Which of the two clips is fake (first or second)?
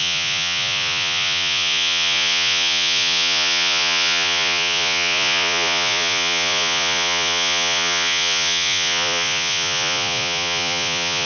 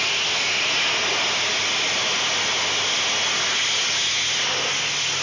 first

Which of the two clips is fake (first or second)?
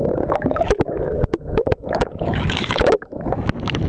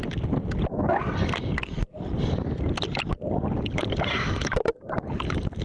first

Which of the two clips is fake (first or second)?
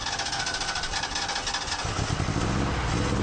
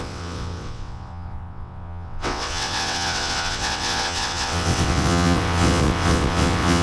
second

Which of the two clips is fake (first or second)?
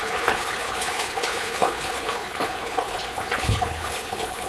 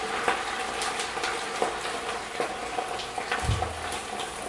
first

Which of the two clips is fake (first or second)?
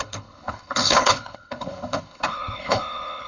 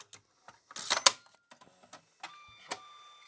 first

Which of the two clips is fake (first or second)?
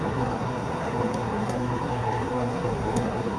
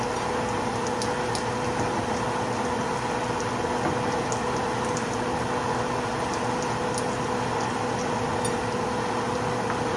first